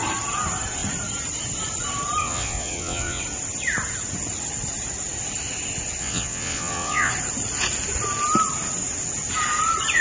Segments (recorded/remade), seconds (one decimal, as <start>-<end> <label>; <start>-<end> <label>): 0.0-2.2 recorded; 2.2-3.2 remade; 3.2-6.0 recorded; 6.0-7.1 remade; 7.1-10.0 recorded